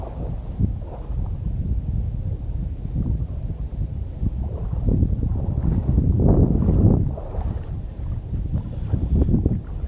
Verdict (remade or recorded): recorded